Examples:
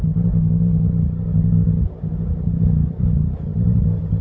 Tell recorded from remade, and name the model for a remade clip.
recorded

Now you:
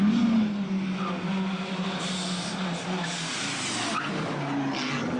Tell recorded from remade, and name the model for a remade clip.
recorded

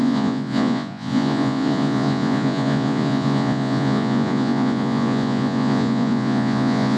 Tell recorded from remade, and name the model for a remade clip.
remade, vocoder, Vocos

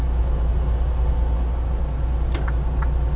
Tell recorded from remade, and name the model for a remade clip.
recorded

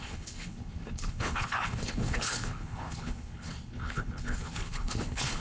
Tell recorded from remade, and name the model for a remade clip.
remade, codec, HILCodec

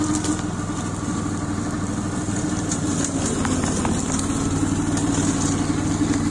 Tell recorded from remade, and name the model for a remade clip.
recorded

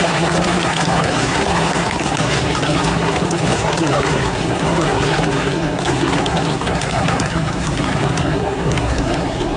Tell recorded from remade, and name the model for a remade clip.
remade, codec, SNAC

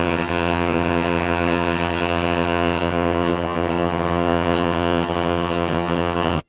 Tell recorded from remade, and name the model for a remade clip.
remade, vocoder, HiFi-GAN